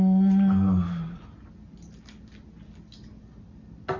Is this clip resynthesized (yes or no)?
no